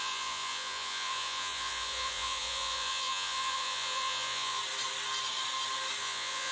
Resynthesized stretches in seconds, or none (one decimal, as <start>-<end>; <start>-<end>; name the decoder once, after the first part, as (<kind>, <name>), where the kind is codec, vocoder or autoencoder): 0.0-4.6 (vocoder, Vocos); 6.0-6.5